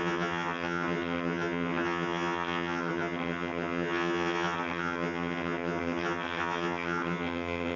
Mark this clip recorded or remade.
remade